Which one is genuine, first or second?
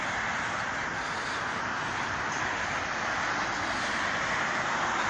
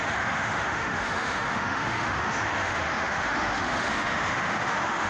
first